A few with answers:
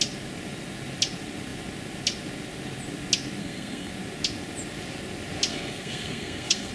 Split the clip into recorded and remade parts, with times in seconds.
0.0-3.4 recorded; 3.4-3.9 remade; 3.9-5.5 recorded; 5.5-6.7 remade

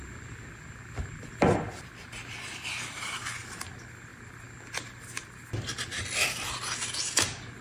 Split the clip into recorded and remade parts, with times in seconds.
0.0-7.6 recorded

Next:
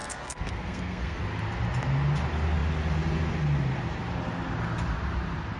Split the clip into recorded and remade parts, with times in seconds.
0.0-1.2 remade; 1.2-5.6 recorded

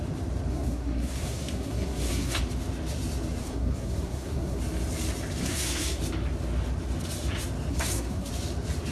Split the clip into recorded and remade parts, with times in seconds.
0.0-0.5 recorded; 0.5-2.4 remade; 2.4-3.4 recorded; 3.4-4.6 remade; 4.6-5.4 recorded; 5.4-6.0 remade; 6.0-7.7 recorded; 7.7-8.3 remade; 8.3-8.9 recorded

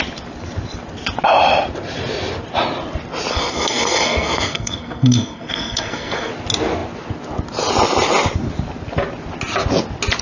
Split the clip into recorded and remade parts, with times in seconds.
0.0-3.3 recorded; 3.3-6.3 remade; 6.3-10.2 recorded

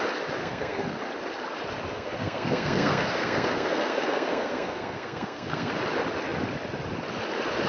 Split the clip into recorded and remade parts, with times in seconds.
0.0-0.4 recorded; 0.4-1.0 remade; 1.0-1.9 recorded; 1.9-5.7 remade; 5.7-7.7 recorded

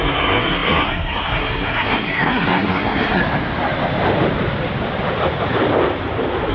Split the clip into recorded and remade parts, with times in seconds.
0.0-3.2 remade; 3.2-6.5 recorded

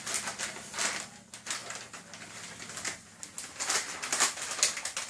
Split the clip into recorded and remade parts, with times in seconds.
0.0-5.1 recorded